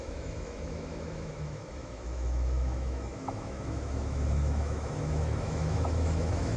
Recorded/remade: remade